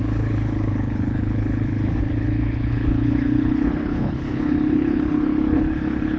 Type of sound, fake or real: fake